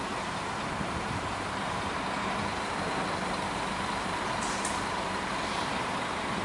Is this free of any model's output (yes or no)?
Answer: no